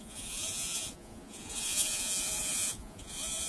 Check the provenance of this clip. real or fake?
fake